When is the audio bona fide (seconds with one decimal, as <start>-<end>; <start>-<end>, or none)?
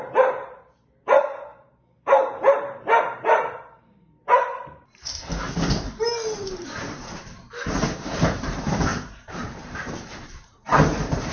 5.3-6.5